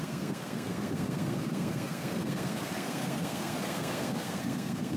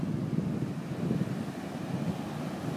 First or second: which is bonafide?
second